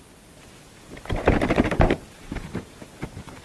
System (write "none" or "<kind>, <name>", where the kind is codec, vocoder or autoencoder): none